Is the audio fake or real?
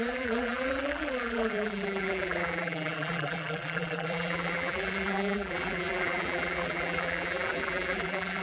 fake